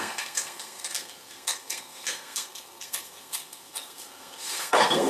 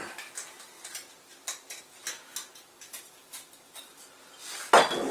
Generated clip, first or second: first